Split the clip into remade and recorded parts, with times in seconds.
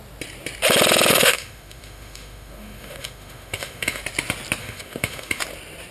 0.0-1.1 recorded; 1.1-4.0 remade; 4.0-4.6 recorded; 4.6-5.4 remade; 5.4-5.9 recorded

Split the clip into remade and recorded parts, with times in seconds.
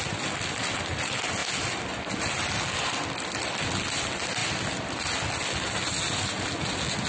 0.0-7.1 recorded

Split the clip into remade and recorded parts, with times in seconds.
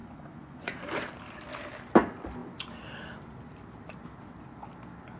0.0-0.8 remade; 0.8-5.2 recorded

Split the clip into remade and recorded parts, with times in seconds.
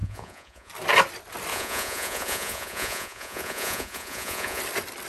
0.0-0.7 remade; 0.7-1.5 recorded; 1.5-4.6 remade; 4.6-5.1 recorded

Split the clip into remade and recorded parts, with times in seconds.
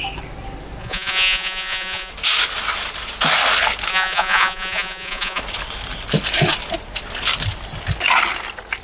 0.0-0.8 recorded; 0.8-2.1 remade; 2.1-3.9 recorded; 3.9-5.4 remade; 5.4-8.8 recorded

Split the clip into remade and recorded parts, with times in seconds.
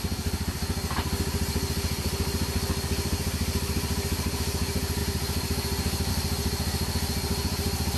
0.0-8.0 recorded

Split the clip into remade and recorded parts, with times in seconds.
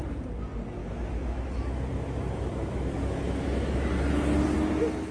0.0-0.8 recorded; 0.8-3.9 remade; 3.9-5.1 recorded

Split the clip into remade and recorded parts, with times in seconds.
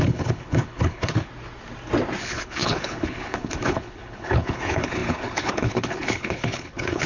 0.0-1.3 remade; 1.3-2.2 recorded; 2.2-7.1 remade